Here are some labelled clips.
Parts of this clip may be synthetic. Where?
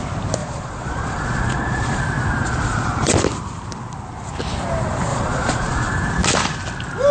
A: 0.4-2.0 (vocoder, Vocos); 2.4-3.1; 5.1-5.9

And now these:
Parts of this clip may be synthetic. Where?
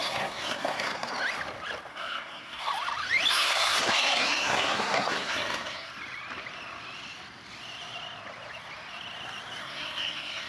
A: 0.0-1.1 (codec, SNAC); 1.9-2.7; 3.3-5.9; 9.6-10.5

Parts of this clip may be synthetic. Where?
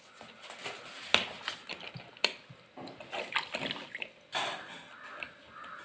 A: none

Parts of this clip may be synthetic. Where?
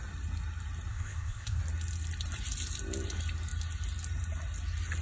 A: 0.9-1.6 (codec, ZipCodec)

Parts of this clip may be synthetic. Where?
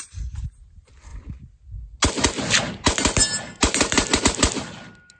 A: none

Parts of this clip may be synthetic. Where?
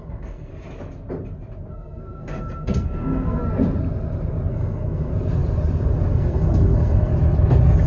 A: 0.0-0.5 (codec, SNAC); 1.7-3.4; 4.5-5.1; 6.1-7.1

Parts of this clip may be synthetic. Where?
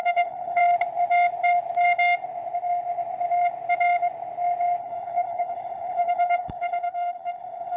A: 0.0-0.6 (codec, HILCodec); 4.8-7.8